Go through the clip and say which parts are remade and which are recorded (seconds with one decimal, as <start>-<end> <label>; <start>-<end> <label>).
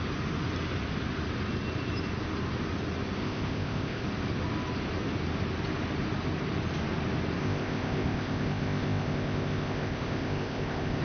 0.0-3.2 recorded; 3.2-4.0 remade; 4.0-7.4 recorded; 7.4-11.0 remade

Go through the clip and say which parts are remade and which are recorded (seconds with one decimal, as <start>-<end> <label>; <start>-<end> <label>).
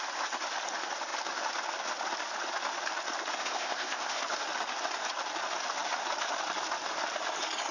0.0-3.4 recorded; 3.4-4.2 remade; 4.2-7.7 recorded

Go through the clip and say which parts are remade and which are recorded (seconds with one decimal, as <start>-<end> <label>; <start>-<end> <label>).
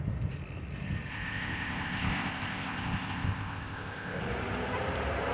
0.0-1.1 recorded; 1.1-4.2 remade; 4.2-5.3 recorded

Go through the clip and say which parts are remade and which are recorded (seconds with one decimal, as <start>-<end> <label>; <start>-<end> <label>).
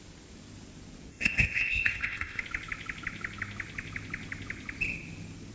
0.0-1.1 recorded; 1.1-2.4 remade; 2.4-5.5 recorded